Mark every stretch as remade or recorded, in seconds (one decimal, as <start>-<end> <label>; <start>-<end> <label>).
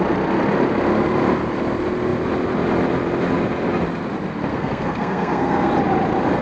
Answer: 0.0-4.5 recorded; 4.5-5.7 remade; 5.7-6.4 recorded